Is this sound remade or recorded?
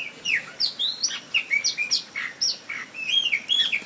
recorded